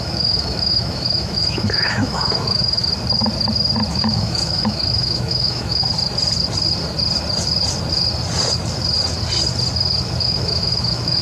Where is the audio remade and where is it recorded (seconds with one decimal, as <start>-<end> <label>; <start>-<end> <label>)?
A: 0.0-2.9 remade; 2.9-3.9 recorded; 3.9-5.8 remade; 5.8-10.2 recorded; 10.2-11.2 remade